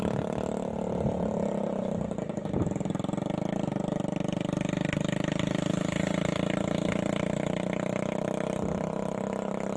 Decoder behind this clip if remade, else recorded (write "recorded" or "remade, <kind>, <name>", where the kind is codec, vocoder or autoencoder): recorded